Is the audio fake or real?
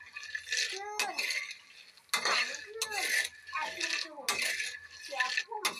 real